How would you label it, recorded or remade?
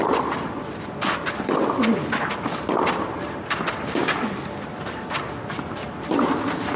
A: recorded